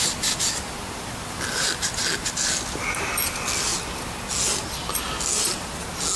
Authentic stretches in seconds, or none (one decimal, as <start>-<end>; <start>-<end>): 0.0-6.2